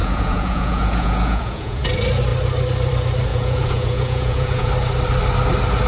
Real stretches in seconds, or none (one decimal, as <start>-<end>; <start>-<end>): 1.8-3.3; 4.7-5.9